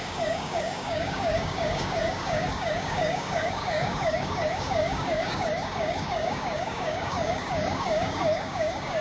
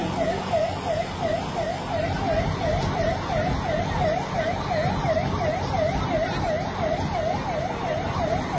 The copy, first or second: first